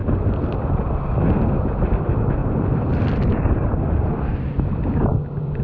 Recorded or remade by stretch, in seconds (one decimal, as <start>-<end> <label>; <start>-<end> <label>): 0.0-2.4 recorded; 2.4-5.6 remade